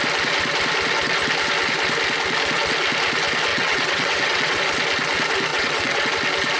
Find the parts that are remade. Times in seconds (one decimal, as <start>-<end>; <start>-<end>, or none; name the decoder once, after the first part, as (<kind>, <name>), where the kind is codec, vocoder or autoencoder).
3.5-4.6 (vocoder, WaveNeXt); 5.5-6.1